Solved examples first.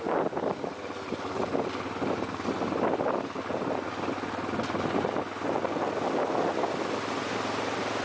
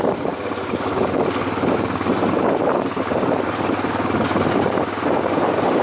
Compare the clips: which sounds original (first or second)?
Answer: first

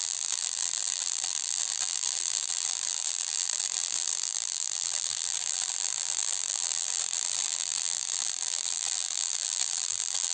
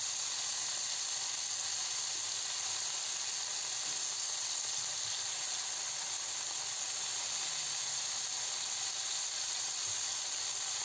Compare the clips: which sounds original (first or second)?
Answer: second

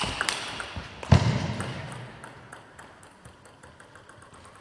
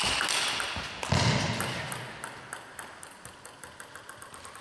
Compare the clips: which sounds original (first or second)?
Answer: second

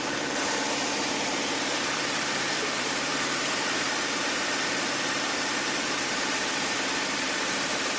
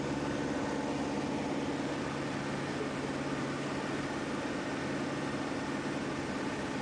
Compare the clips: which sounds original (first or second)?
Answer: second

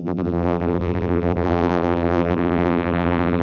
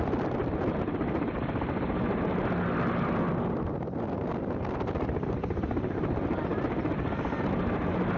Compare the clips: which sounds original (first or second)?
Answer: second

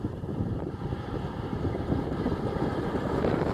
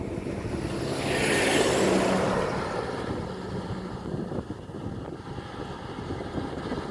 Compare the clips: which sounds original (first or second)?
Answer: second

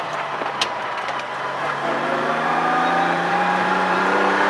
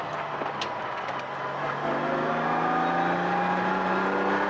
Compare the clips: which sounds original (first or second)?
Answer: second